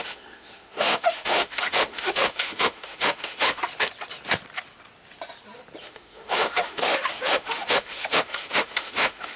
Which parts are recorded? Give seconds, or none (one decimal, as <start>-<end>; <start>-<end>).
3.6-5.8